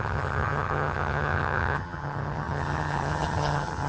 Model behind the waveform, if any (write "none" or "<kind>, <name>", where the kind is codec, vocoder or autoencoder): vocoder, HiFi-GAN